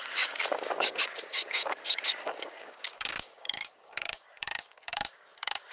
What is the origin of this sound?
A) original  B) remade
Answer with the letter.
B